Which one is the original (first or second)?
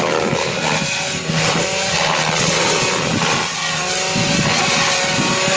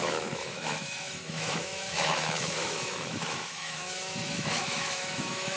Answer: first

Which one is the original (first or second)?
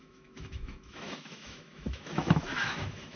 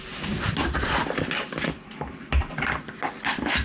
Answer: second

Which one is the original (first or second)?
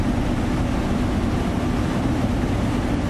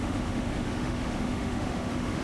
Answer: first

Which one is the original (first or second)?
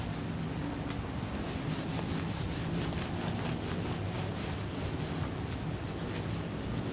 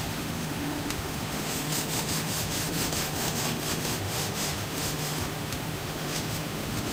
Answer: first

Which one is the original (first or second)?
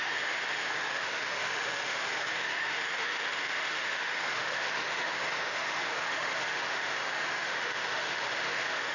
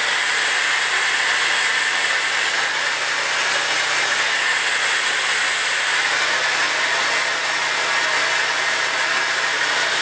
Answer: second